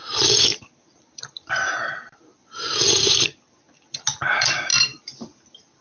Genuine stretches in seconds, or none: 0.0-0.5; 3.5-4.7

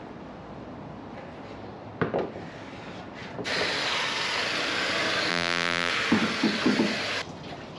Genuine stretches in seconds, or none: 0.0-5.3; 5.9-7.8

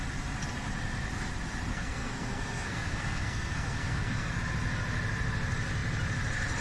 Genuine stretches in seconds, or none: 0.0-1.7; 4.4-6.6

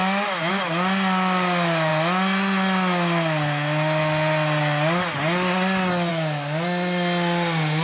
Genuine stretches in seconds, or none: 0.0-7.8

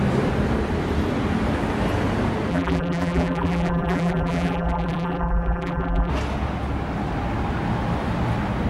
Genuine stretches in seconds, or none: 0.0-2.5; 6.1-8.7

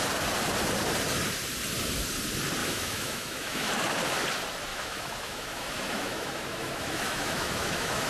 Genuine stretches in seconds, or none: 0.0-2.6; 3.7-4.7

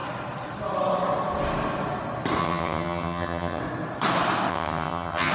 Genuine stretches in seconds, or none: 0.0-2.4; 3.6-4.5

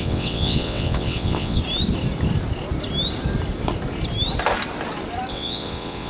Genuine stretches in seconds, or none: 1.6-5.3